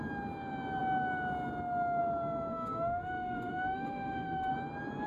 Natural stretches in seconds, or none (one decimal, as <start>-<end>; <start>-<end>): 0.0-2.5; 4.5-5.1